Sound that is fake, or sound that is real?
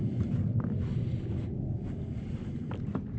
real